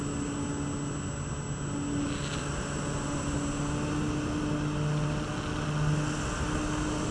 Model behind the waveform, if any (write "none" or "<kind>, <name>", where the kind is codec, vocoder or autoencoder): none